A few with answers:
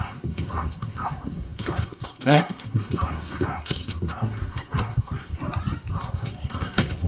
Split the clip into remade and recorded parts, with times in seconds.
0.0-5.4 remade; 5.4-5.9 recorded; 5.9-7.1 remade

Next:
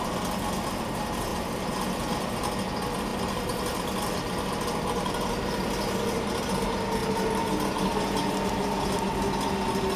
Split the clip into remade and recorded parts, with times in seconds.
0.0-1.3 recorded; 1.3-2.3 remade; 2.3-3.1 recorded; 3.1-6.4 remade; 6.4-10.0 recorded

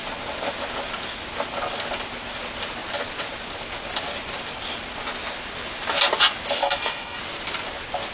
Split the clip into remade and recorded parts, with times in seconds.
0.0-6.6 recorded; 6.6-7.2 remade; 7.2-8.1 recorded

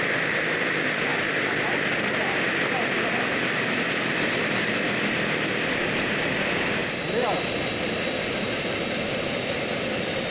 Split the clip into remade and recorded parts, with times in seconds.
0.0-6.8 remade; 6.8-8.3 recorded; 8.3-10.3 remade

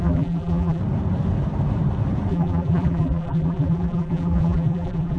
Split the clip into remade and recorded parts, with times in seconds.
0.0-0.8 remade; 0.8-2.3 recorded; 2.3-5.2 remade

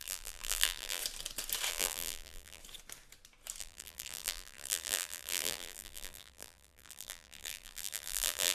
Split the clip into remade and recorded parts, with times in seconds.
0.0-1.0 remade; 1.0-1.7 recorded; 1.7-2.6 remade; 2.6-3.6 recorded; 3.6-8.5 remade